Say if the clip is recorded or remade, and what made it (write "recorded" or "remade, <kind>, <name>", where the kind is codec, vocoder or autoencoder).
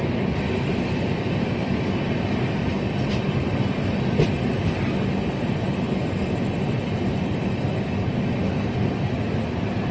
recorded